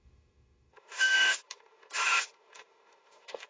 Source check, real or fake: fake